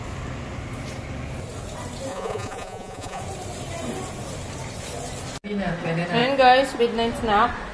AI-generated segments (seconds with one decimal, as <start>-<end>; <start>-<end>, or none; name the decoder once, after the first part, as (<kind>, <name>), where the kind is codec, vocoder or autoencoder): 2.1-3.2 (vocoder, Vocos)

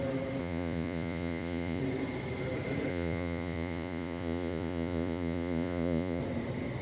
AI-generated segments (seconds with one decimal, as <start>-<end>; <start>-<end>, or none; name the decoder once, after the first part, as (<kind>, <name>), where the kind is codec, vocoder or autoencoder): 0.4-1.8 (vocoder, Vocos); 2.9-6.2

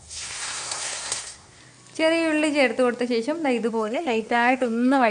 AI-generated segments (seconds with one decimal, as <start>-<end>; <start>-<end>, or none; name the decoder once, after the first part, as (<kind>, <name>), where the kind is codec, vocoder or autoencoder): 0.0-1.6 (codec, SNAC); 3.7-5.1